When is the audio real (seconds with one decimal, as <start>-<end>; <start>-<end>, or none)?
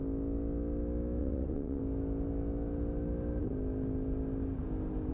0.0-1.2; 1.8-5.1